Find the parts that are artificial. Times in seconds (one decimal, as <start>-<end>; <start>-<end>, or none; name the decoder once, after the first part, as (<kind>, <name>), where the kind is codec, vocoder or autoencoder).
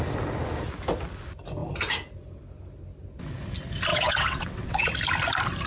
3.9-4.9 (vocoder, WaveNeXt)